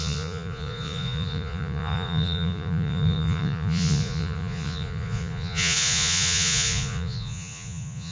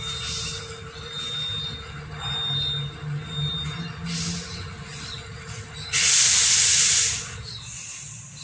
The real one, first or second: second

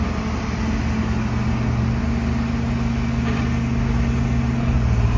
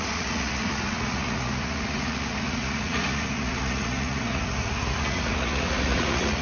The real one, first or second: first